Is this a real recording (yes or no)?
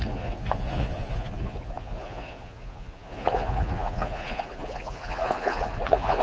no